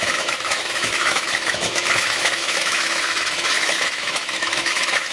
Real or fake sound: fake